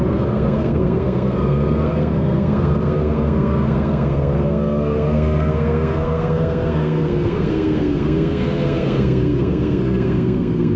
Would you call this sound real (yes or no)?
no